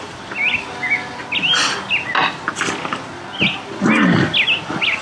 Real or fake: real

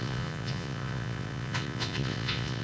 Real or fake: fake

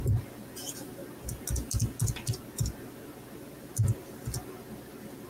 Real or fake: real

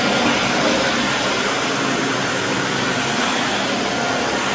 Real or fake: real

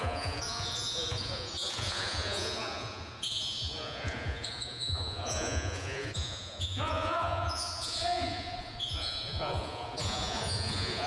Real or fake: fake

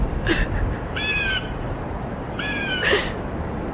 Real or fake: real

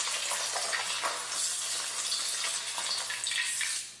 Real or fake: real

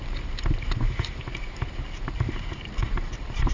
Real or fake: fake